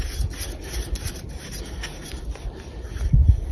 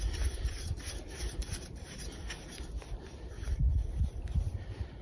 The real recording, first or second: first